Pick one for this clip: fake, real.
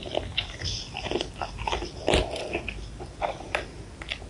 real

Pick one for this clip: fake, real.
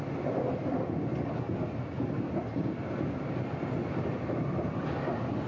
real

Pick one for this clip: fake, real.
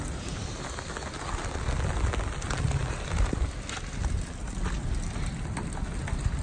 real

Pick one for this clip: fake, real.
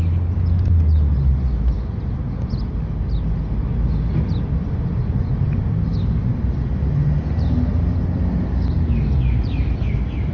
real